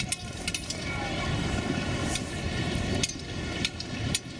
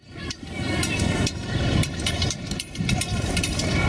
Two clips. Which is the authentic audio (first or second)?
first